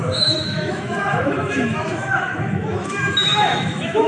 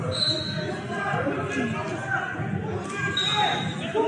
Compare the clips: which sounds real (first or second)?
second